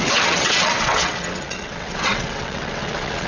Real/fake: fake